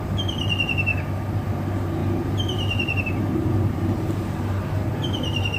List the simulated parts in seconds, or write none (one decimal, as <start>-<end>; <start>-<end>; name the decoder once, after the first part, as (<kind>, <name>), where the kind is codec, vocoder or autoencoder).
0.0-5.6 (vocoder, BigVGAN v2)